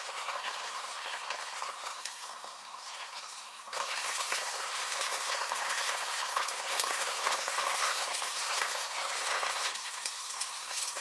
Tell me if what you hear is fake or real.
fake